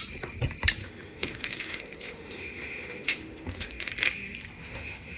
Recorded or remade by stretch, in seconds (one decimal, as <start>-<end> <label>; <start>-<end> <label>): 0.0-0.8 recorded; 0.8-3.9 remade; 3.9-4.6 recorded; 4.6-5.2 remade